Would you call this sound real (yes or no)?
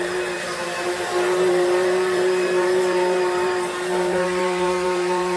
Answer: no